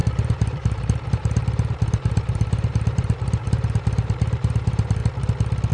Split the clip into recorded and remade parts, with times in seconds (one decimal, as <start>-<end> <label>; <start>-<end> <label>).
0.0-5.0 remade; 5.0-5.7 recorded